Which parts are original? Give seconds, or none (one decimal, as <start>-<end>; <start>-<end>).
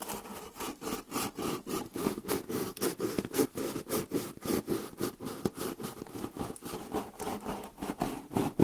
0.0-2.0; 3.6-8.6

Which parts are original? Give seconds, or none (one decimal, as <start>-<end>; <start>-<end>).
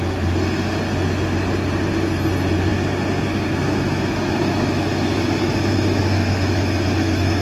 0.0-3.6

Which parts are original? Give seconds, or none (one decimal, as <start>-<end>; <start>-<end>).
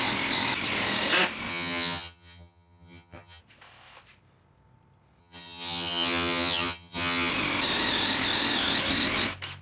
0.0-1.5; 3.4-5.2; 7.3-9.6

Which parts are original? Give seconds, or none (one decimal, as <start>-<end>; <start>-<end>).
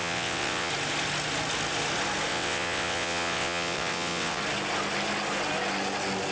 0.7-2.3; 4.4-6.3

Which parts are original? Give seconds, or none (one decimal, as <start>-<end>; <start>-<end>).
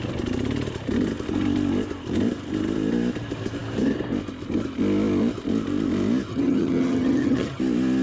0.0-6.3; 7.6-8.0